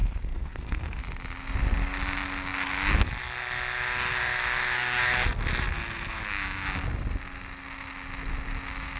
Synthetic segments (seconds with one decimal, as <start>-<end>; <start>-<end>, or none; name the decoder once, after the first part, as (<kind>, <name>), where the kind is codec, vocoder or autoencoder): 0.0-1.0 (codec, SNAC)